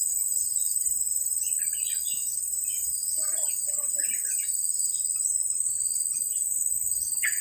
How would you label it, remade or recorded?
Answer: recorded